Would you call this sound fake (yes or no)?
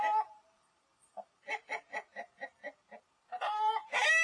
no